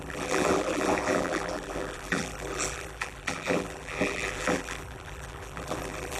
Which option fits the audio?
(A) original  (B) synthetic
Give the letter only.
B